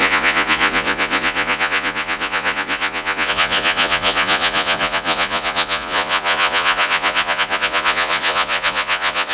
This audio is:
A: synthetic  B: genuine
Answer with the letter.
A